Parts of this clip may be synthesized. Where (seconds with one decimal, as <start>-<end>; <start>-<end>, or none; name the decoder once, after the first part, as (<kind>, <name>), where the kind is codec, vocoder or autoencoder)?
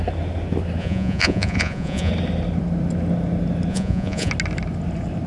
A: 0.8-2.1 (vocoder, Vocos); 3.7-4.3